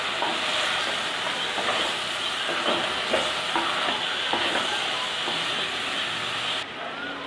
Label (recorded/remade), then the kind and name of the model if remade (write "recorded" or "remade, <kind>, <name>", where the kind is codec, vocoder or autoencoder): recorded